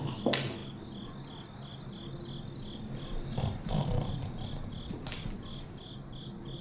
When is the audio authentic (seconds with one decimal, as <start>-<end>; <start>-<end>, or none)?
0.0-6.6